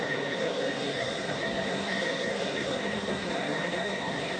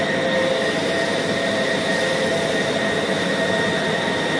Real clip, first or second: second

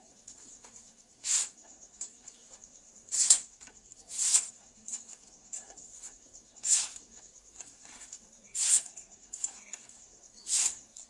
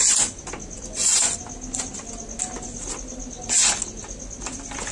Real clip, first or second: second